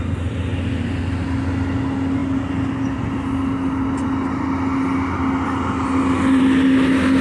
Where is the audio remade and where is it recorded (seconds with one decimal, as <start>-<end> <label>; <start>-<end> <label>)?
0.0-7.2 recorded